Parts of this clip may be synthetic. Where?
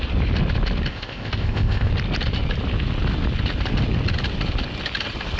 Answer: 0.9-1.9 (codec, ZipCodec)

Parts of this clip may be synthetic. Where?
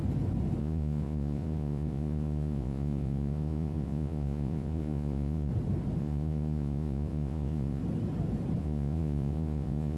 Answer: 0.6-5.5 (vocoder, Vocos); 6.0-7.8; 8.6-10.0